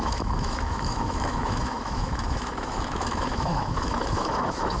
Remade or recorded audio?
remade